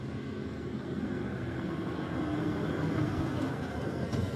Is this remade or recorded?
remade